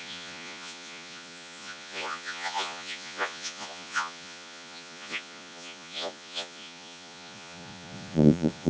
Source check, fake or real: fake